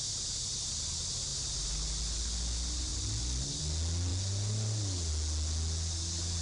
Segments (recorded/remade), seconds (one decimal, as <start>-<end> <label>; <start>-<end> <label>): 0.0-6.4 recorded